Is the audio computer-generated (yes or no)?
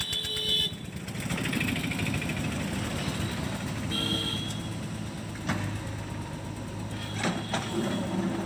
no